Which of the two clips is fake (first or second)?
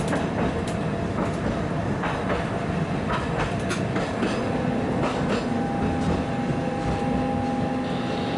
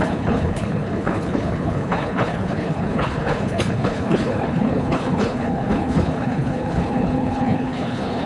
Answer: second